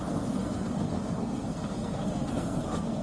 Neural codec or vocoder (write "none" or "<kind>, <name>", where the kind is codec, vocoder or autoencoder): codec, SNAC